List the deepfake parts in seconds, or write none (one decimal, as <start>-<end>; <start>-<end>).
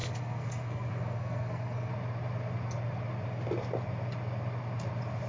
0.0-1.9